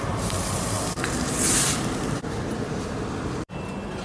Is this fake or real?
fake